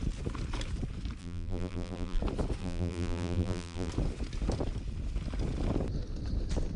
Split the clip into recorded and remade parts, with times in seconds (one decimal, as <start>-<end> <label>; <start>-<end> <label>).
0.0-1.2 recorded; 1.2-2.2 remade; 2.2-2.6 recorded; 2.6-3.9 remade; 3.9-6.8 recorded